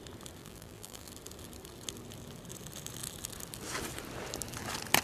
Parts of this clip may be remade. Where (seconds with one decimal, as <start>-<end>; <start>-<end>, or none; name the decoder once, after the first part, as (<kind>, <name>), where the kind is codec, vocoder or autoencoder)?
0.4-1.1 (vocoder, BigVGAN v2)